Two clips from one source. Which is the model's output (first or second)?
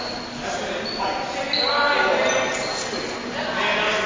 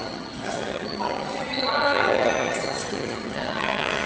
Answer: second